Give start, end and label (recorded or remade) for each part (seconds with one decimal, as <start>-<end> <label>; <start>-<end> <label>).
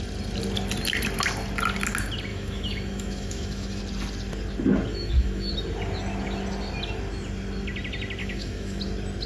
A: 0.0-2.3 recorded; 2.3-3.8 remade; 3.8-4.9 recorded; 4.9-5.5 remade; 5.5-8.2 recorded; 8.2-8.8 remade; 8.8-9.3 recorded